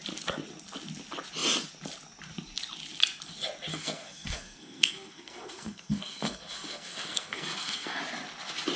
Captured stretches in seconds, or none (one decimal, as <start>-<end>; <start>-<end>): 0.0-3.7; 8.0-8.8